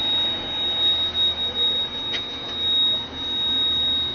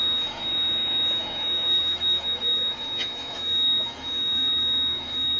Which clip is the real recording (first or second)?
first